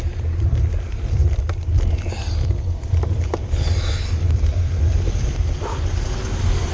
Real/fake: real